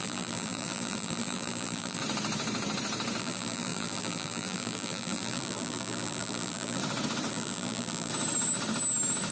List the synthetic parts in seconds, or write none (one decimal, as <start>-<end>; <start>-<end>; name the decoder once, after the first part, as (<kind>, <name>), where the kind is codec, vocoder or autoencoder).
0.0-2.0 (vocoder, BigVGAN v2); 3.2-6.8; 7.3-8.1